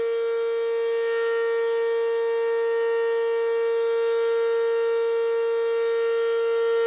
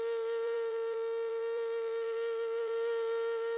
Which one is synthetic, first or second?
second